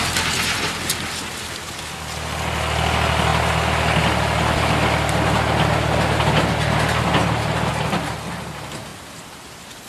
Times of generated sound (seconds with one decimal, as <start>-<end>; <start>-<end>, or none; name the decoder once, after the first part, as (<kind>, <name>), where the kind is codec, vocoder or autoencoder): none